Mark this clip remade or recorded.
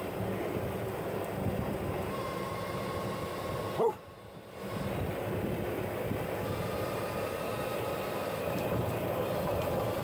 remade